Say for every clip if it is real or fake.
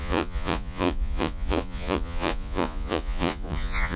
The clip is fake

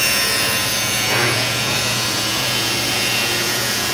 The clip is fake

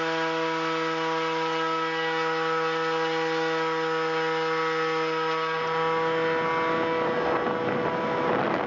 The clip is real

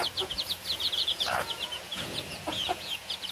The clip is fake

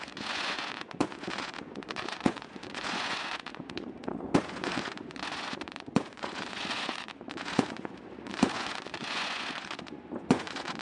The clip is fake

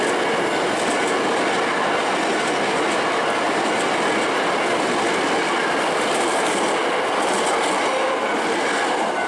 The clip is real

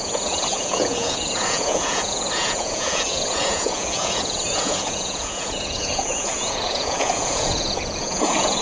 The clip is fake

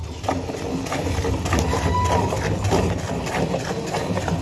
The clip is real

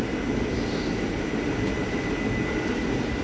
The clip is real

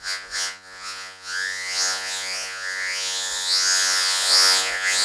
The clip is fake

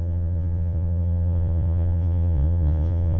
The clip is fake